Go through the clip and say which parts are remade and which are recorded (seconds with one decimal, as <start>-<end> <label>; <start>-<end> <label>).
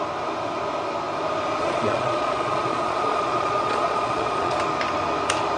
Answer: 0.0-1.6 recorded; 1.6-4.6 remade; 4.6-5.6 recorded